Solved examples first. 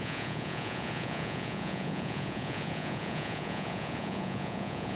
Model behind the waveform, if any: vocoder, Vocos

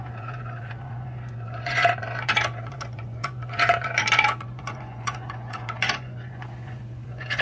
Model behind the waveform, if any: vocoder, Vocos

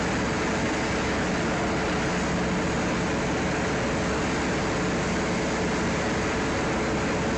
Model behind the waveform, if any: none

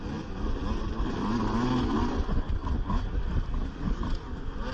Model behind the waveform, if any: none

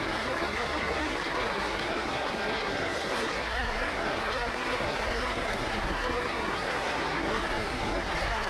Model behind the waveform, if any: codec, SNAC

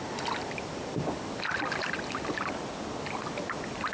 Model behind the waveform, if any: none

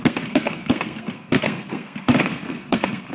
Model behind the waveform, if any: codec, SNAC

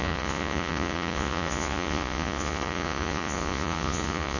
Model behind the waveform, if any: vocoder, Vocos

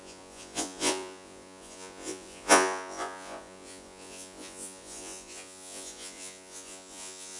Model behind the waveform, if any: vocoder, Vocos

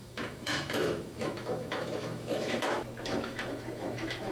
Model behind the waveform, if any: autoencoder, DAC-VAE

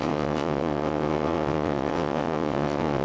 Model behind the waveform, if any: vocoder, WaveNeXt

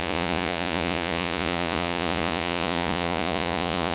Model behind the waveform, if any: vocoder, Vocos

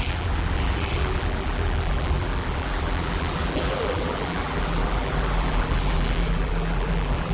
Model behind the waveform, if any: vocoder, BigVGAN v2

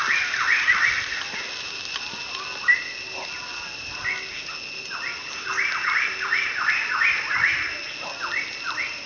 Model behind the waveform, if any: none